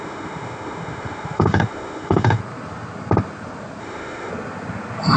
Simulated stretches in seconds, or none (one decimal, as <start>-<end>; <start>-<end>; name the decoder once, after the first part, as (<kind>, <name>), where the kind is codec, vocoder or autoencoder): 0.0-2.4 (autoencoder, DAC-VAE); 3.8-4.3